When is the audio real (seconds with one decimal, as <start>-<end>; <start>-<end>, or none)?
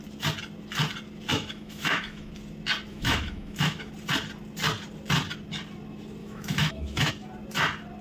0.0-1.3; 2.3-2.9; 3.9-6.2; 7.1-8.0